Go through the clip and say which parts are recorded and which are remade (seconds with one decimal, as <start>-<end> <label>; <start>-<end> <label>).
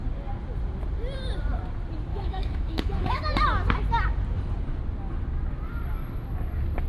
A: 0.0-2.1 recorded; 2.1-3.2 remade; 3.2-6.9 recorded